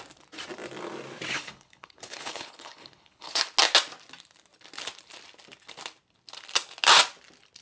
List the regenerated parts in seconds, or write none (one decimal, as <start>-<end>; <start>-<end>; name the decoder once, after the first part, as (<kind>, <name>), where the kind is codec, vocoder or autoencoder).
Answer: 1.3-3.4 (codec, HILCodec)